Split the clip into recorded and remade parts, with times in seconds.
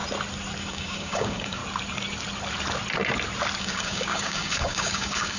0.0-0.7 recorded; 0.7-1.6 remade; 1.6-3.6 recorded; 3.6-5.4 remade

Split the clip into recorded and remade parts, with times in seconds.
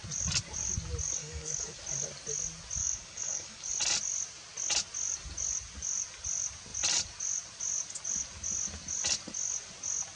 0.0-1.2 recorded; 1.2-1.8 remade; 1.8-2.8 recorded; 2.8-3.7 remade; 3.7-10.2 recorded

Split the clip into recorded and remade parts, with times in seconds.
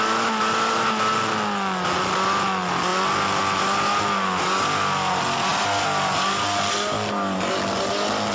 0.0-8.3 recorded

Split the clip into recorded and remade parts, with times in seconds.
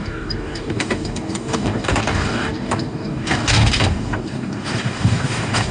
0.0-5.7 remade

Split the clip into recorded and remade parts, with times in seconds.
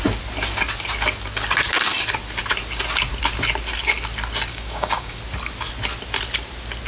0.0-4.5 recorded; 4.5-5.2 remade; 5.2-6.9 recorded